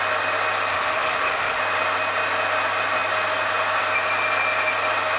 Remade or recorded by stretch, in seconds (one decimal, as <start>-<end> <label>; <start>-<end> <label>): 0.0-0.7 recorded; 0.7-1.6 remade; 1.6-5.2 recorded